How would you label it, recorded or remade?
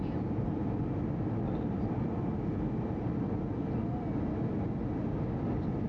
recorded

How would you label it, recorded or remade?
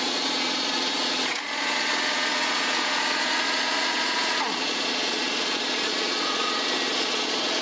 remade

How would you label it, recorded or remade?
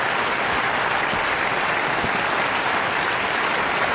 remade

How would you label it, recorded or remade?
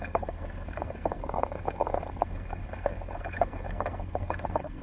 remade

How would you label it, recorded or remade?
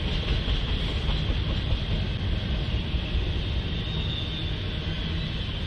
recorded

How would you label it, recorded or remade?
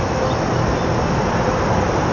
recorded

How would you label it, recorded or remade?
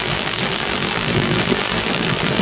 remade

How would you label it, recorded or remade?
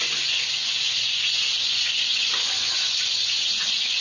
remade